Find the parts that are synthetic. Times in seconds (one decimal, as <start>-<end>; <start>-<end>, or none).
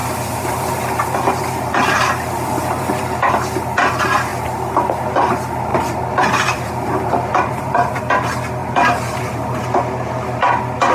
0.0-3.3; 5.7-8.0; 8.6-9.5